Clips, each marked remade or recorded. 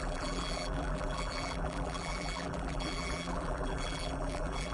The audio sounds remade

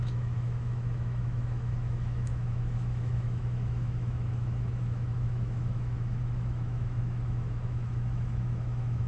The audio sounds remade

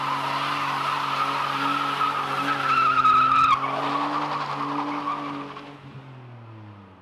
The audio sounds recorded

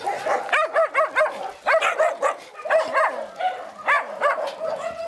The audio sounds recorded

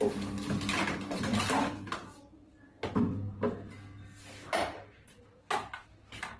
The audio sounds recorded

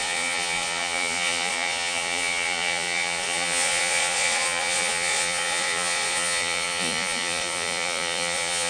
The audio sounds remade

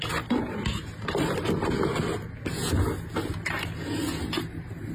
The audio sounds recorded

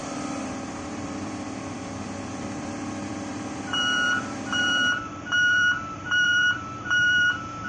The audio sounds remade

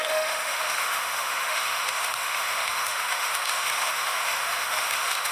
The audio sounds remade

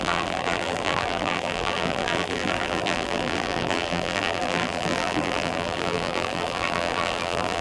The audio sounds remade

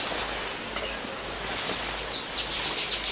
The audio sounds recorded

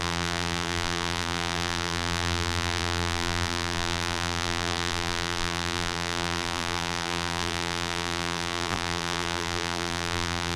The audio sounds remade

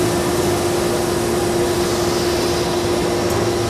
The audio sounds recorded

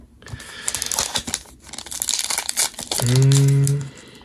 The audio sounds recorded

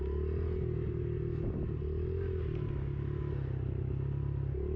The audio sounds recorded